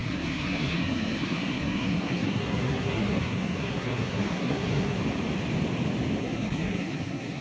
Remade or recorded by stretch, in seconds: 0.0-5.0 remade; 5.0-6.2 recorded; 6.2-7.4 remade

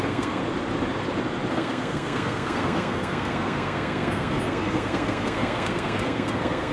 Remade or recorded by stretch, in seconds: 0.0-0.4 remade; 0.4-1.5 recorded; 1.5-6.7 remade

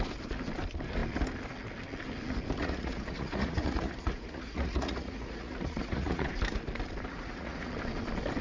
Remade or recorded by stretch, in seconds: 0.0-2.6 recorded; 2.6-6.4 remade; 6.4-7.1 recorded; 7.1-7.7 remade; 7.7-8.4 recorded

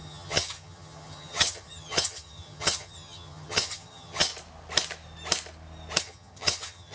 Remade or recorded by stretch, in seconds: 0.0-4.3 remade; 4.3-6.0 recorded; 6.0-6.9 remade

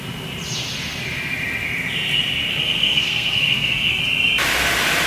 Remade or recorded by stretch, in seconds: 0.0-2.5 recorded; 2.5-4.0 remade; 4.0-5.1 recorded

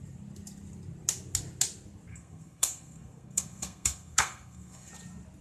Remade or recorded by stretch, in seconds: 0.0-2.1 recorded; 2.1-4.9 remade; 4.9-5.4 recorded